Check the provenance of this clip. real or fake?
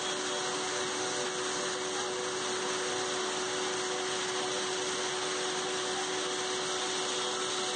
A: real